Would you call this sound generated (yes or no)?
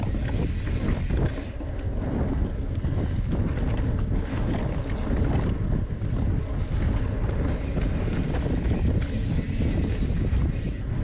no